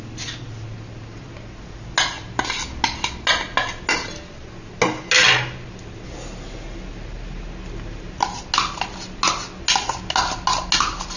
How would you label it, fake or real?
real